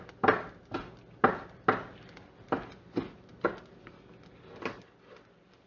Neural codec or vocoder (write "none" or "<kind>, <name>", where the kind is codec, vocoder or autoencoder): none